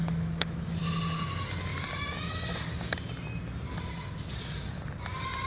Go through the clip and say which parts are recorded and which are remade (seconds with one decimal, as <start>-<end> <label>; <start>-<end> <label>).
0.0-0.8 remade; 0.8-5.5 recorded